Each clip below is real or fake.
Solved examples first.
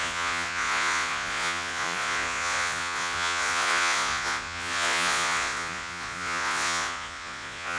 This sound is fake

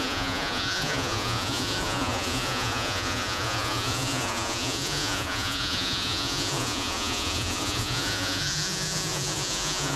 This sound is fake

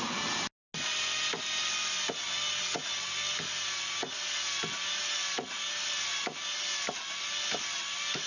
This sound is real